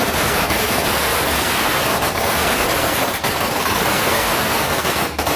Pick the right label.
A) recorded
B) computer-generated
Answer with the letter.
B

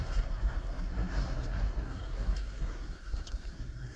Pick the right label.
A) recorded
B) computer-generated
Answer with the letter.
B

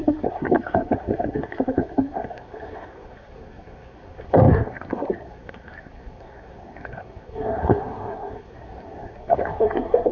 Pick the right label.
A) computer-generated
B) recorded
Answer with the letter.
A